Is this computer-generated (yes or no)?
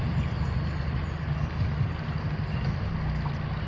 no